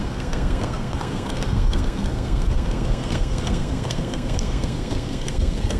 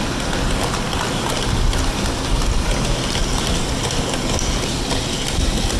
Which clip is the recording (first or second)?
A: second